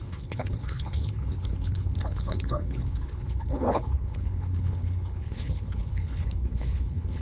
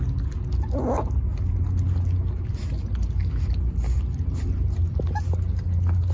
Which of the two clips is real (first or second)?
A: second